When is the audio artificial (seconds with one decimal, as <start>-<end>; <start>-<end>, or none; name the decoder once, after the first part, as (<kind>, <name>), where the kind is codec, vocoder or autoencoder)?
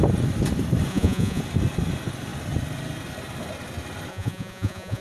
0.9-1.4 (vocoder, Vocos); 4.1-5.0